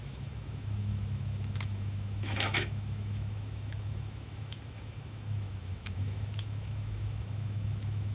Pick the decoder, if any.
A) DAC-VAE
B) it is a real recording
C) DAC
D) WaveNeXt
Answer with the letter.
A